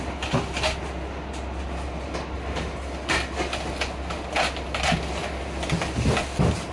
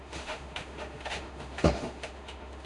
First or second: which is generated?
second